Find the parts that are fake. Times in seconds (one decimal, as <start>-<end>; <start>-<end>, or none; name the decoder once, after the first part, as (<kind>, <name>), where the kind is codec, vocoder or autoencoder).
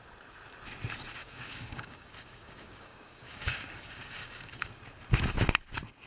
1.2-4.7 (codec, DAC)